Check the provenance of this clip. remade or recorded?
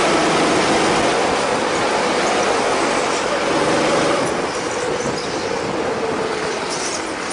recorded